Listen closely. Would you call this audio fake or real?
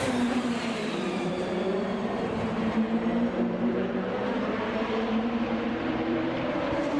fake